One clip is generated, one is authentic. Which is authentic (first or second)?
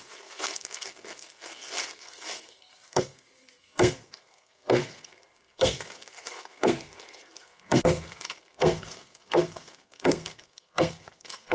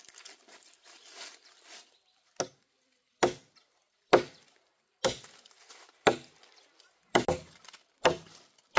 second